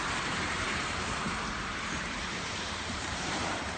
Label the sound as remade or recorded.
remade